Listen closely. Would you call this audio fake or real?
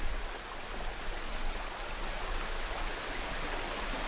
real